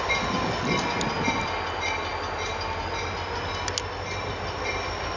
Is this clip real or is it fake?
real